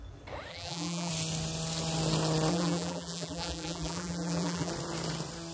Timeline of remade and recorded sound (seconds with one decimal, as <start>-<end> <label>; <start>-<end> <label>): 0.0-0.5 recorded; 0.5-1.1 remade; 1.1-2.5 recorded; 2.5-4.7 remade; 4.7-5.5 recorded